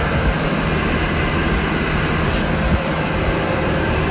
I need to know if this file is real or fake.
real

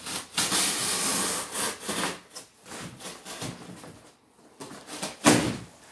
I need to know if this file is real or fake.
real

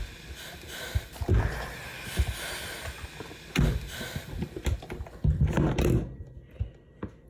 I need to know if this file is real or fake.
real